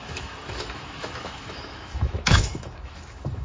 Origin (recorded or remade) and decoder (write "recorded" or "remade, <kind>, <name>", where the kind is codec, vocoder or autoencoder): remade, autoencoder, DAC-VAE